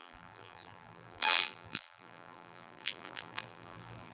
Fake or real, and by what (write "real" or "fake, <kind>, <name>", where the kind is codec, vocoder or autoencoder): fake, vocoder, BigVGAN v2